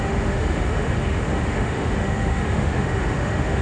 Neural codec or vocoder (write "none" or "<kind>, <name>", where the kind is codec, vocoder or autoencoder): autoencoder, DAC-VAE